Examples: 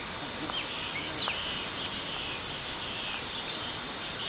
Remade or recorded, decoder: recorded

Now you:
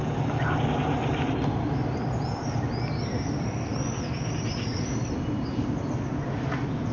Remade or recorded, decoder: recorded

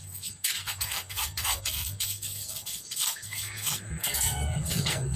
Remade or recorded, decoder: remade, codec, SNAC